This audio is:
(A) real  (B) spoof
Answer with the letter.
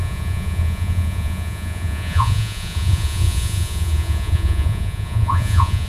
B